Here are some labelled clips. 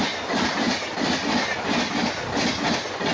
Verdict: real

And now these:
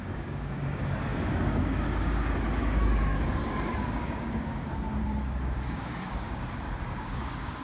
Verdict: fake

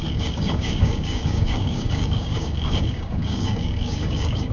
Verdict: fake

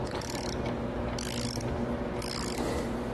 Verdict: real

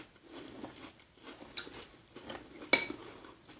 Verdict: real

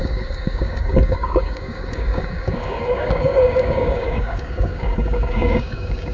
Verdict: fake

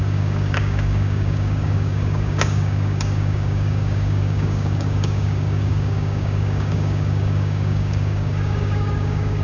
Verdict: fake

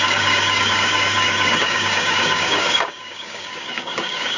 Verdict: fake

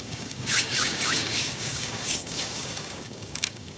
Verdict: fake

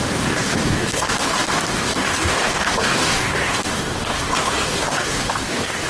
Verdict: fake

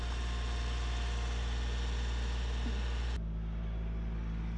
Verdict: real